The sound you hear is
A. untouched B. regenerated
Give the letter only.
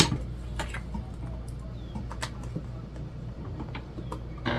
A